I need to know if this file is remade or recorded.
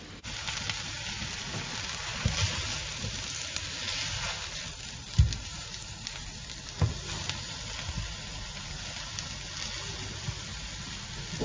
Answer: recorded